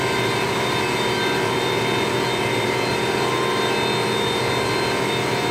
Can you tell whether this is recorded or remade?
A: recorded